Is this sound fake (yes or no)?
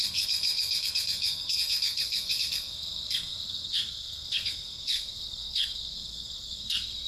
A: yes